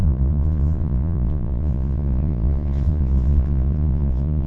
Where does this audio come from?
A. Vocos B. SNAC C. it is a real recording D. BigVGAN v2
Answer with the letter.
A